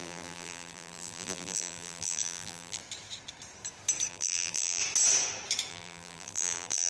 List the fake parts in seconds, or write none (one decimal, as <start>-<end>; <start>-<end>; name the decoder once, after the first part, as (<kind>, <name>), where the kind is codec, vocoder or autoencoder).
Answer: 0.0-2.8 (vocoder, BigVGAN v2); 4.1-4.8; 5.7-6.9